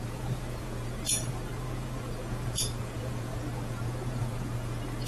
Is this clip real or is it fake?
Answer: fake